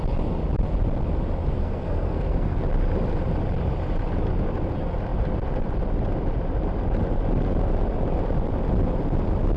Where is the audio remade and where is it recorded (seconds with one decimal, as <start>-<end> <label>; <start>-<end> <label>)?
0.0-1.6 recorded; 1.6-2.7 remade; 2.7-9.6 recorded